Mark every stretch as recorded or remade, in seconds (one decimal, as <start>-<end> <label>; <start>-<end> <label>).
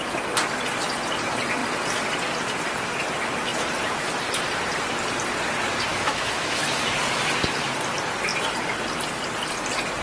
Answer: 0.0-5.9 recorded; 5.9-6.9 remade; 6.9-10.0 recorded